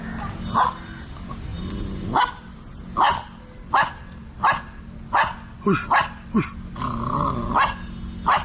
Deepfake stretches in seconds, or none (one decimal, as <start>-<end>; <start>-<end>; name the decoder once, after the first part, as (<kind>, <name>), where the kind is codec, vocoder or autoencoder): none